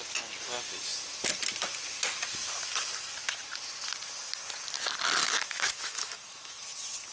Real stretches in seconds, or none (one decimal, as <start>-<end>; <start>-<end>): 0.0-5.2; 6.6-7.1